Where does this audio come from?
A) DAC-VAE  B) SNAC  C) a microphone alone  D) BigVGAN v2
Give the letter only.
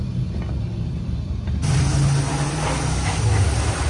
C